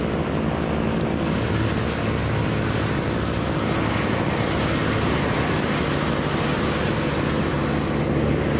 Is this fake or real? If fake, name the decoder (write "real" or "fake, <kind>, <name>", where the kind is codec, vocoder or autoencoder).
real